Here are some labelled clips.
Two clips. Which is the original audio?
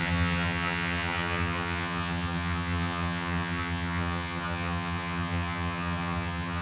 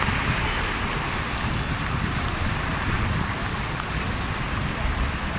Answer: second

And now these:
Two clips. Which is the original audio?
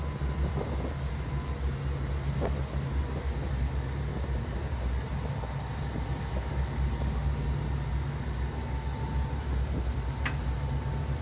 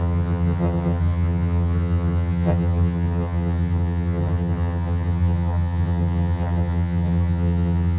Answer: first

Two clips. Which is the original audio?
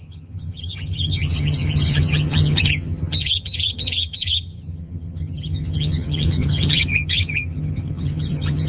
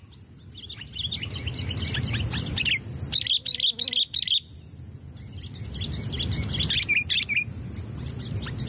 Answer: second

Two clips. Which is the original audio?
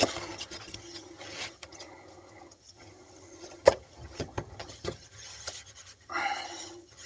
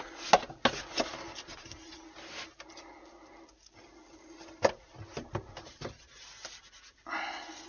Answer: second